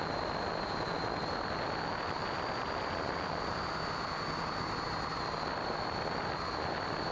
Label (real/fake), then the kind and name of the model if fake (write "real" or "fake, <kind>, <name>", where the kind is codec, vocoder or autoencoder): real